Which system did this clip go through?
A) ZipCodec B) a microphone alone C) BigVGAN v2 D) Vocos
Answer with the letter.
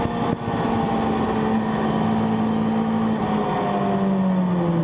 B